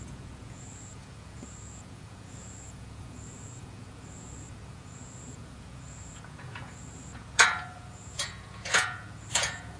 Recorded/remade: remade